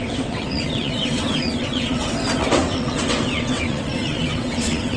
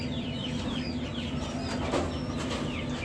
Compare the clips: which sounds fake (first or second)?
first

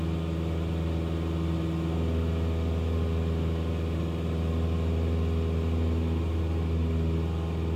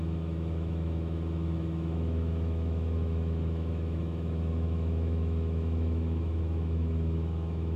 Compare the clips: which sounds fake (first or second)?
second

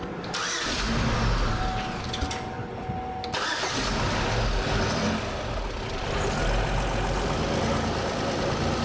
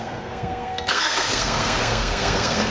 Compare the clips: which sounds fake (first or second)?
second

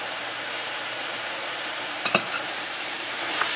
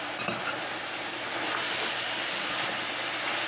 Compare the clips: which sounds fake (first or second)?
first